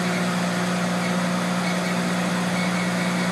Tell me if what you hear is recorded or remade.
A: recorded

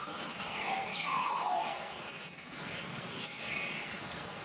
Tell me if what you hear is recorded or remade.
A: remade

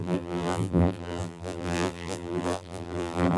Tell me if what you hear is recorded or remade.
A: remade